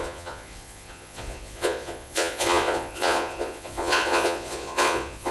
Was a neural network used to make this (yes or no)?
yes